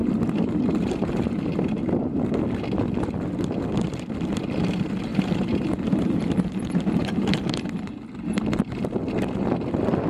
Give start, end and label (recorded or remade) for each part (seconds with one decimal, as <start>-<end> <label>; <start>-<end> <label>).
0.0-1.8 remade; 1.8-5.1 recorded; 5.1-7.7 remade; 7.7-10.1 recorded

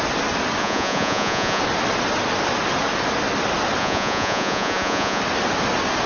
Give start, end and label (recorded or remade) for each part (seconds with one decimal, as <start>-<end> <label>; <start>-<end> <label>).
0.0-0.6 recorded; 0.6-1.6 remade; 1.6-3.8 recorded; 3.8-5.2 remade; 5.2-6.1 recorded

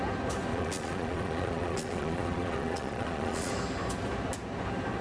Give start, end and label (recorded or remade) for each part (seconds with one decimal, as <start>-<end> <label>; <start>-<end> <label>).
0.0-0.5 recorded; 0.5-3.5 remade; 3.5-5.0 recorded

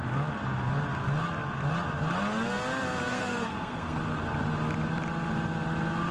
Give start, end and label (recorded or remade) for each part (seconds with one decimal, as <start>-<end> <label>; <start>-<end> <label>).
0.0-3.1 recorded; 3.1-4.0 remade; 4.0-6.1 recorded